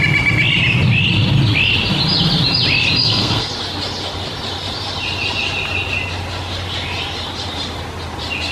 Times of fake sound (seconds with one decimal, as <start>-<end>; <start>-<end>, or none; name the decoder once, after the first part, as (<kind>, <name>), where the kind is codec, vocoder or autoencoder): 3.0-3.5 (codec, SNAC)